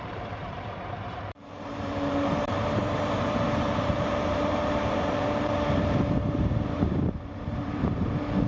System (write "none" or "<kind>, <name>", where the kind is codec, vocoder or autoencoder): vocoder, BigVGAN v2